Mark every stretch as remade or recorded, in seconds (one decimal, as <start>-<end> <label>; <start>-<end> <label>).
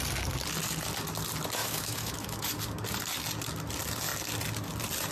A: 0.0-1.6 recorded; 1.6-2.5 remade; 2.5-5.1 recorded